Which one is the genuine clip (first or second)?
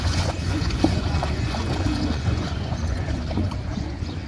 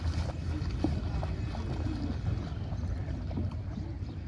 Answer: second